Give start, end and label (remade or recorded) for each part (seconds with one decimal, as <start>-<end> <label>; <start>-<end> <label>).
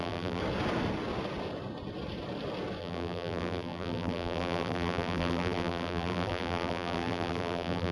0.0-0.4 remade; 0.4-2.8 recorded; 2.8-7.9 remade